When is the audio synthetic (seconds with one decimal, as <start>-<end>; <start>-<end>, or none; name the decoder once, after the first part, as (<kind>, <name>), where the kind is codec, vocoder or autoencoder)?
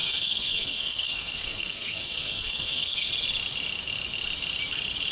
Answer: 0.0-3.1 (codec, SNAC)